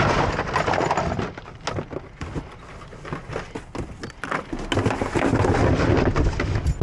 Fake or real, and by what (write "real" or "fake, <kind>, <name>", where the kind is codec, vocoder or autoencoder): real